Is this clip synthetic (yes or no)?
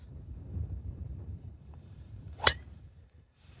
yes